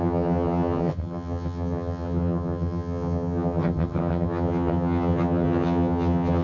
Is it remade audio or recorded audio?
remade